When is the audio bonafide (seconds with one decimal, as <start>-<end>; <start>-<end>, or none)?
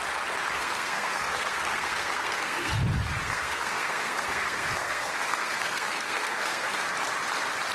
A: 0.0-0.6; 2.7-3.2; 6.9-7.7